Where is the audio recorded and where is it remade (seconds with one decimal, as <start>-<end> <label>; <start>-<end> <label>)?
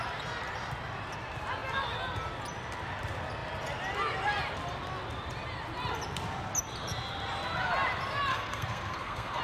0.0-8.3 recorded; 8.3-9.4 remade